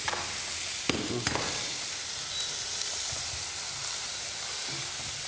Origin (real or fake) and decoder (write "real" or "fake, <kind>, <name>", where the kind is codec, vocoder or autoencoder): real